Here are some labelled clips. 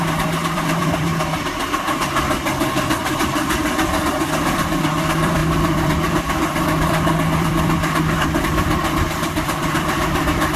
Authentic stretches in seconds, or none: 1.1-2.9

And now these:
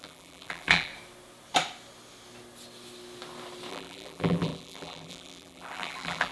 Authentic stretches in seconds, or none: 0.9-3.7

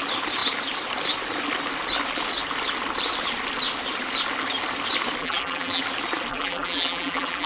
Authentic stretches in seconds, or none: 0.0-5.2; 5.8-6.3

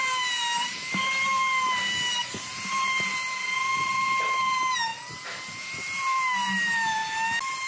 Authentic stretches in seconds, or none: 4.9-5.6; 7.0-7.7